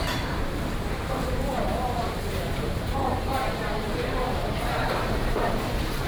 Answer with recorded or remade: remade